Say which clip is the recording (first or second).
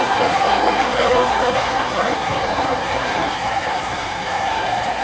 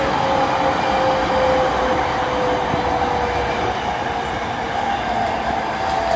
second